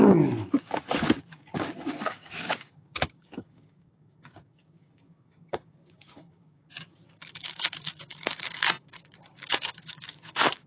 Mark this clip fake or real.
fake